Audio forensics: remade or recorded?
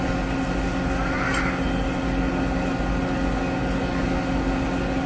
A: recorded